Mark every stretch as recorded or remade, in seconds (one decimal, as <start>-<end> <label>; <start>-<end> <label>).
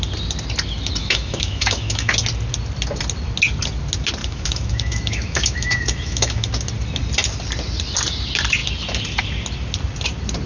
0.0-1.0 recorded; 1.0-2.1 remade; 2.1-4.2 recorded; 4.2-6.5 remade; 6.5-10.5 recorded